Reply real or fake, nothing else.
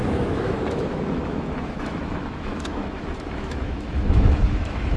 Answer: fake